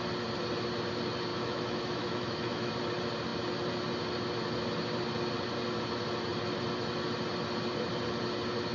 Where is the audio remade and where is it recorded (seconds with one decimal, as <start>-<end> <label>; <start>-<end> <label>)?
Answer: 0.0-1.3 recorded; 1.3-2.7 remade; 2.7-8.7 recorded